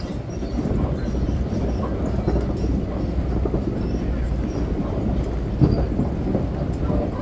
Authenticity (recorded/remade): recorded